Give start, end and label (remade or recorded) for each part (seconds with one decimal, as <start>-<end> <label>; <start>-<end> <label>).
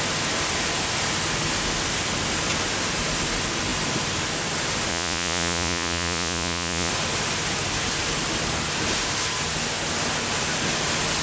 0.0-4.9 recorded; 4.9-6.9 remade; 6.9-11.2 recorded